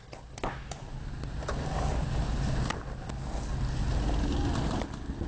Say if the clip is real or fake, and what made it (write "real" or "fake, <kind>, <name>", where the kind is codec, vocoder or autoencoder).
real